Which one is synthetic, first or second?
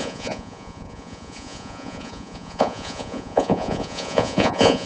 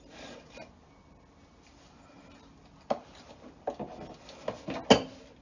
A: first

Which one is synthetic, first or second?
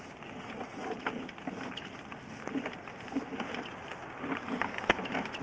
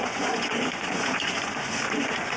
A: second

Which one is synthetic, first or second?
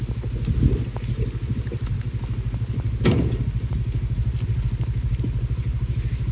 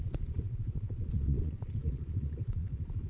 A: second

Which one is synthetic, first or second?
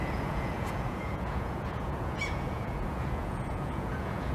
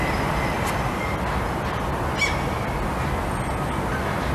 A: first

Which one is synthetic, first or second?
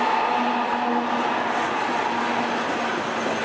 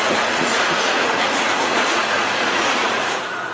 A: second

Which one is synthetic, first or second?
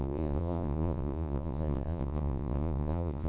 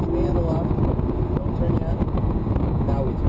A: first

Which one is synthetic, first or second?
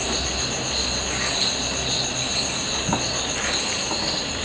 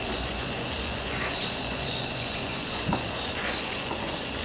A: second